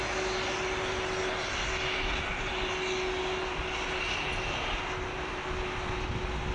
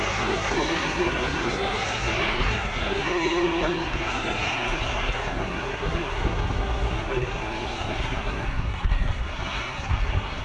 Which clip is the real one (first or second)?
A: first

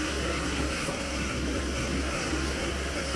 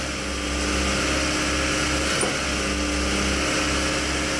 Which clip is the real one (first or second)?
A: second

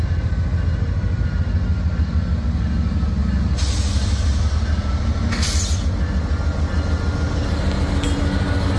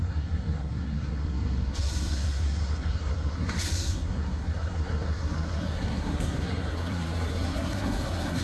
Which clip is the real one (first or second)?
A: first